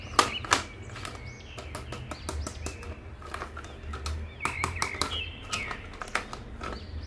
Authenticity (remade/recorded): recorded